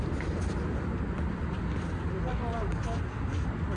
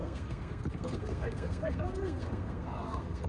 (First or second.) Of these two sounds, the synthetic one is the second